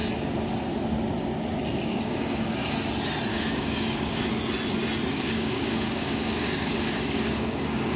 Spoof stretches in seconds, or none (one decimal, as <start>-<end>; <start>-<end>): 1.9-2.5; 3.3-4.2; 5.1-8.0